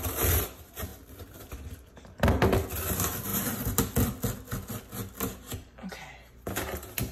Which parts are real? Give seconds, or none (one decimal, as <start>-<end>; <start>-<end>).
0.0-7.1